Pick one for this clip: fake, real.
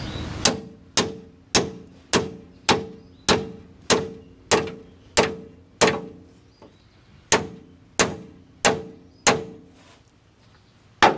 real